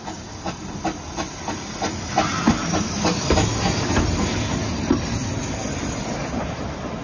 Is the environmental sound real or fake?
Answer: real